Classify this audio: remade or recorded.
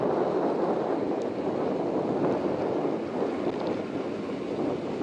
recorded